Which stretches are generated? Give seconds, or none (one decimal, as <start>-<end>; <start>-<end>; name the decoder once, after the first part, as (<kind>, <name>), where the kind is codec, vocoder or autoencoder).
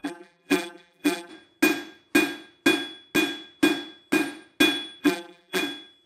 0.0-1.3 (vocoder, BigVGAN v2); 5.0-5.6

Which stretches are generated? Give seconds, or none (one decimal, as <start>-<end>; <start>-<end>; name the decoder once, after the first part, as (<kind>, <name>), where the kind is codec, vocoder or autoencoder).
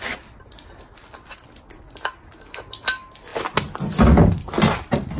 none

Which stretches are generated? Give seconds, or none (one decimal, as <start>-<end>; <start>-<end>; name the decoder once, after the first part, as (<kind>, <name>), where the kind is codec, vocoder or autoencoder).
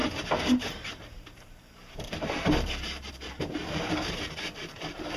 0.0-5.2 (vocoder, BigVGAN v2)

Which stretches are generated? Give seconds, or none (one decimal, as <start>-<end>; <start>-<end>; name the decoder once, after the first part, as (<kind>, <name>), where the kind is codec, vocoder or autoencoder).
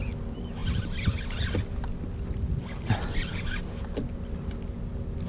none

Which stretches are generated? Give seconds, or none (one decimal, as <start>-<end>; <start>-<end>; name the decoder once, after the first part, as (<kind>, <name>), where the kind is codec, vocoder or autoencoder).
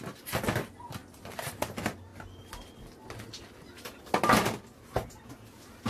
none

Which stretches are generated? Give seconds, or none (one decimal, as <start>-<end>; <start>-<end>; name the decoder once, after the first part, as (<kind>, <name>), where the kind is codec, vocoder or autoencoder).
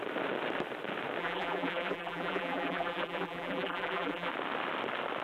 1.2-4.3 (vocoder, BigVGAN v2)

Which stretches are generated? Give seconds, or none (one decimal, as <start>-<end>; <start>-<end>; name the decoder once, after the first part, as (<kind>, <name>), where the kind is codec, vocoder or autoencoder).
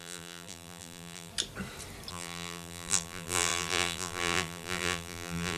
0.0-1.3 (vocoder, BigVGAN v2); 2.1-5.6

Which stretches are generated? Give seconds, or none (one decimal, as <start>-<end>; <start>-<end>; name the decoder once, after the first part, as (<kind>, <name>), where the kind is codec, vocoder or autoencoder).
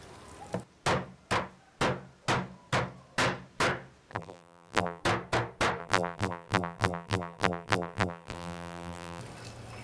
4.1-5.0 (vocoder, BigVGAN v2); 5.8-9.2